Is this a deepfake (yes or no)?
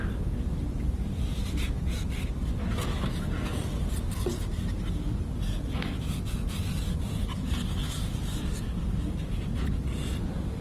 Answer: no